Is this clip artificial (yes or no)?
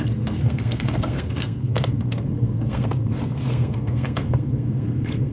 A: yes